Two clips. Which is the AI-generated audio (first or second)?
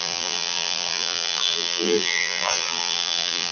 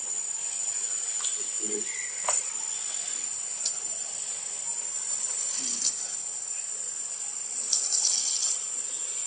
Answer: first